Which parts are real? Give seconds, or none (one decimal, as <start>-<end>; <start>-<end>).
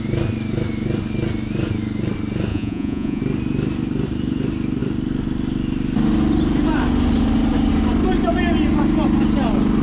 0.0-2.5; 3.2-9.8